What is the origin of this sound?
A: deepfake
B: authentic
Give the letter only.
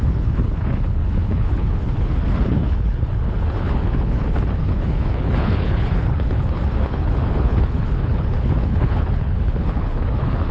A